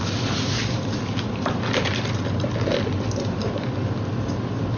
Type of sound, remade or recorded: recorded